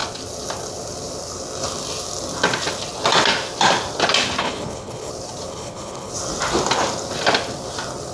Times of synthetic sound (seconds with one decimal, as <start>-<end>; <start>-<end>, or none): 4.4-5.1; 5.5-6.1

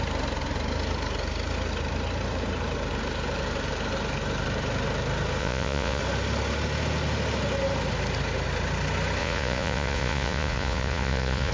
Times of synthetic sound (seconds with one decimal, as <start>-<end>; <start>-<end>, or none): 5.4-6.0; 9.2-11.5

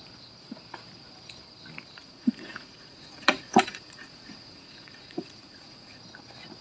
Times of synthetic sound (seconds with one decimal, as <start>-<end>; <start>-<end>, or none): 2.0-6.0

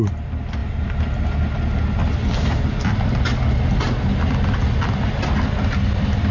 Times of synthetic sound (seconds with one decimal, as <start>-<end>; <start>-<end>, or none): none

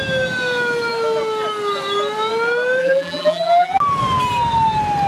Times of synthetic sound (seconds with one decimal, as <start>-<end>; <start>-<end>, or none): 2.8-3.8

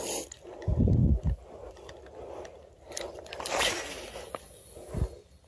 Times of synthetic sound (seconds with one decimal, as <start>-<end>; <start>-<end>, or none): 1.0-4.3

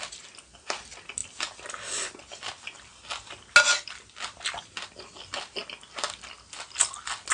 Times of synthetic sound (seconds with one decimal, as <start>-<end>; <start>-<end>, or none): none

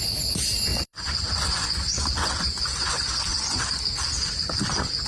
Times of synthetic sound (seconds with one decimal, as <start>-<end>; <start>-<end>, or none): 0.7-3.8